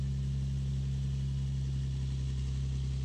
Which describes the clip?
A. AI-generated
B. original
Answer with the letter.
B